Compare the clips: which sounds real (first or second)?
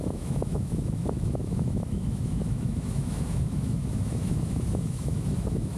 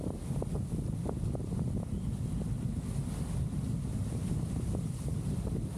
second